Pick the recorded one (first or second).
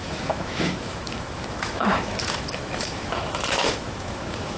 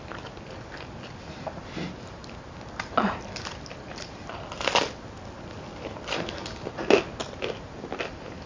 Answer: second